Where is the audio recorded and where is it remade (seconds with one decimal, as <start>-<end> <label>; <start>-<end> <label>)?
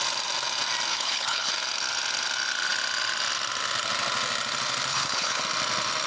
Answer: 0.0-0.9 recorded; 0.9-1.5 remade; 1.5-4.9 recorded; 4.9-5.4 remade; 5.4-6.1 recorded